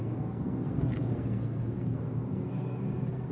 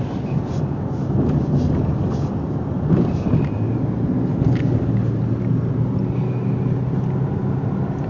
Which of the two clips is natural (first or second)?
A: second